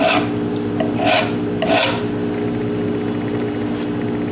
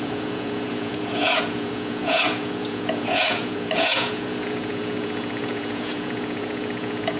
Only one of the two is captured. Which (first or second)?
first